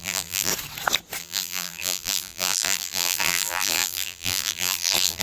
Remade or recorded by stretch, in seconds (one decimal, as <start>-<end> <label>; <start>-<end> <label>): 0.0-0.5 remade; 0.5-1.2 recorded; 1.2-5.2 remade